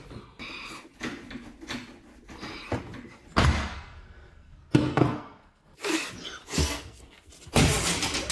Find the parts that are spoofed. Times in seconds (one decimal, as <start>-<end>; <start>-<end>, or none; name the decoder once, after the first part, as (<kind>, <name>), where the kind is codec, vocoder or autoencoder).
3.7-6.1 (codec, SNAC); 6.6-7.3